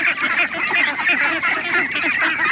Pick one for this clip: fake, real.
real